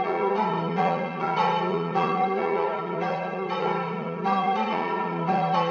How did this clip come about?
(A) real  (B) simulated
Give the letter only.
B